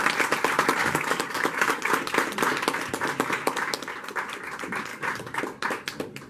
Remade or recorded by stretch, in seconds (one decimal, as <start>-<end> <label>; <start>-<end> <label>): 0.0-0.8 recorded; 0.8-1.8 remade; 1.8-4.9 recorded; 4.9-5.4 remade; 5.4-6.3 recorded

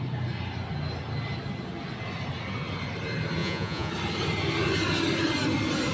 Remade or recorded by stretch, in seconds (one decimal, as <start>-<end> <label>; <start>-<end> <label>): 0.0-3.4 recorded; 3.4-3.9 remade; 3.9-5.9 recorded

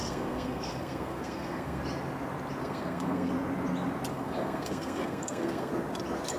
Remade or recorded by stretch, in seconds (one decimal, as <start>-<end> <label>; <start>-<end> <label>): 0.0-1.8 remade; 1.8-2.6 recorded; 2.6-3.3 remade; 3.3-4.1 recorded; 4.1-5.7 remade; 5.7-6.4 recorded

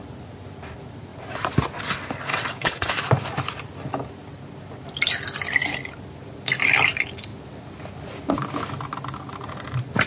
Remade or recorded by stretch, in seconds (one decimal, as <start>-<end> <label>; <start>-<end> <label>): 0.0-2.3 recorded; 2.3-2.9 remade; 2.9-10.1 recorded

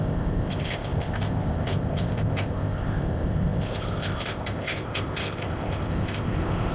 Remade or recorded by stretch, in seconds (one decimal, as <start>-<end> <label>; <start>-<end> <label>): 0.0-6.7 remade

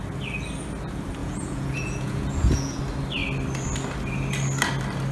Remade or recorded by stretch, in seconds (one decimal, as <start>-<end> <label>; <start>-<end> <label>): 0.0-1.2 recorded; 1.2-2.8 remade; 2.8-5.1 recorded

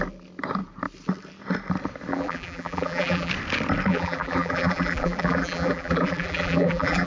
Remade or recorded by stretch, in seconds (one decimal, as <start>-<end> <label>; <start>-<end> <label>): 0.0-2.1 recorded; 2.1-3.3 remade; 3.3-3.9 recorded; 3.9-7.1 remade

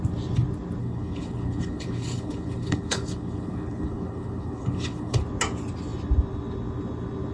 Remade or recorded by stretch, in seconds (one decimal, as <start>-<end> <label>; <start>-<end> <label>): 0.0-0.8 recorded; 0.8-5.2 remade; 5.2-7.3 recorded